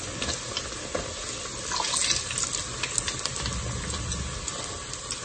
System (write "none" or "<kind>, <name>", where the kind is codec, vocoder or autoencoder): none